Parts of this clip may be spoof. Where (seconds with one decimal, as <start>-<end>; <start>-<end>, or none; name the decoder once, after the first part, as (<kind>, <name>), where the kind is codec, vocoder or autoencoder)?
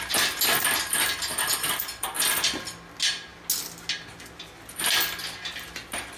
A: none